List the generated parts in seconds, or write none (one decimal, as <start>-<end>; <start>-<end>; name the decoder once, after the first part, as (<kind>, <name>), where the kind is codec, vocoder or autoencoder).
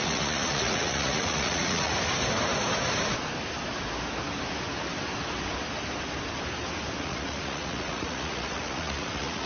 0.0-1.9 (vocoder, Vocos); 7.0-9.5